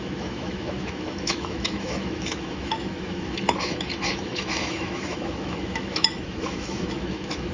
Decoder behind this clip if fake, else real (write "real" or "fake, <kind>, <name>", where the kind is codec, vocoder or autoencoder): fake, autoencoder, DAC-VAE